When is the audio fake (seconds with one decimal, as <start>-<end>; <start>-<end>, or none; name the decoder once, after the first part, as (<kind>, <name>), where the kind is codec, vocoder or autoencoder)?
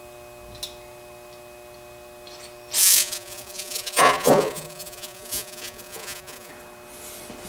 2.8-6.5 (vocoder, Vocos)